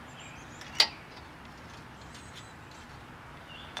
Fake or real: real